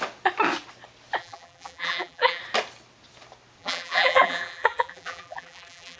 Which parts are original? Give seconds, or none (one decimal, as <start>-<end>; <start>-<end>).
0.0-1.2; 2.4-3.6

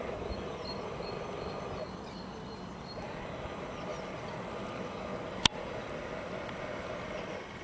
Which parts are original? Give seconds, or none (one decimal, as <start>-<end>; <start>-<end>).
3.9-4.6; 5.1-5.7

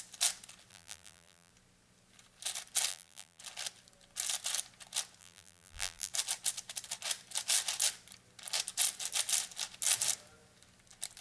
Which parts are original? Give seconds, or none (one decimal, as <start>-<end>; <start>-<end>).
0.0-0.7; 1.5-2.9; 3.4-5.2; 6.1-11.2

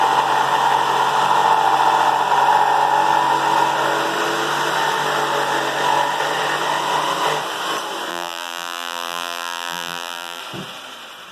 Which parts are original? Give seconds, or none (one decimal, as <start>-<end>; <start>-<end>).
0.0-8.1; 10.4-11.3

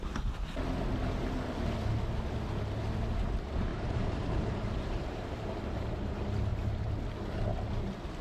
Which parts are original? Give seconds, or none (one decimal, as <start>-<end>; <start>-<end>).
0.0-3.7; 6.1-8.2

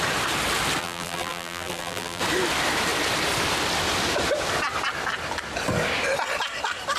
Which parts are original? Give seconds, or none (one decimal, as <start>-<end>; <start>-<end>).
0.0-0.8; 2.2-7.0